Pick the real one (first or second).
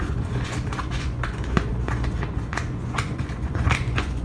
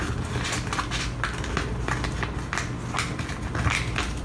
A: second